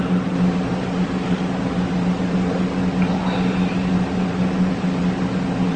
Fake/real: real